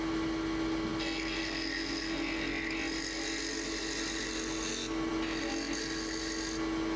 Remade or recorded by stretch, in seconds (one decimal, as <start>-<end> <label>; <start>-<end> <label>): 0.0-7.0 recorded